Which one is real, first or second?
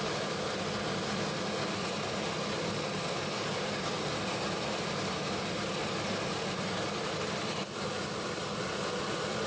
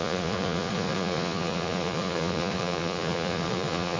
first